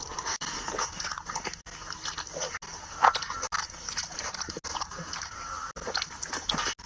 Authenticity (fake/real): real